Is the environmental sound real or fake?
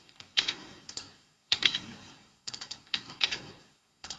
fake